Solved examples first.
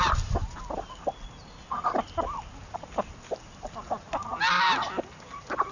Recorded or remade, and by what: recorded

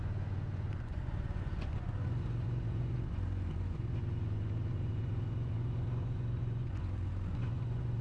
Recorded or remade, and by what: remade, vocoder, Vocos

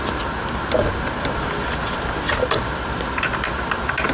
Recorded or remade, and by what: recorded